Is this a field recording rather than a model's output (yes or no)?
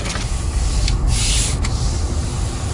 yes